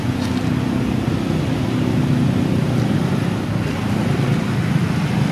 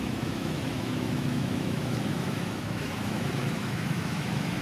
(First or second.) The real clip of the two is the first